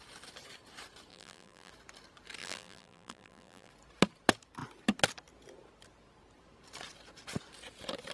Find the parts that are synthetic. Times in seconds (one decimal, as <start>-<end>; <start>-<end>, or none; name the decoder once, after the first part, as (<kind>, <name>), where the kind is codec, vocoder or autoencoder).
1.1-1.7 (vocoder, BigVGAN v2); 2.4-3.7